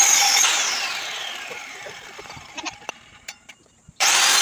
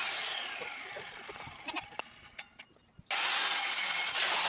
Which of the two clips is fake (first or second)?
first